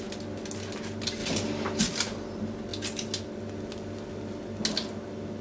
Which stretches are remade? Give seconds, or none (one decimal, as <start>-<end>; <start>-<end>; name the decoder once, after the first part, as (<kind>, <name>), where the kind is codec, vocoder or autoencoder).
none